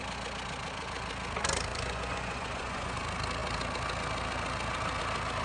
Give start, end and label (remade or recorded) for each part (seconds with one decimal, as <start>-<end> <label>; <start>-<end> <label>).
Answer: 0.0-1.7 recorded; 1.7-3.0 remade; 3.0-5.4 recorded